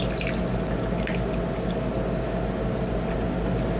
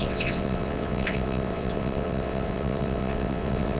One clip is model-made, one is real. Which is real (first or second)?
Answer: first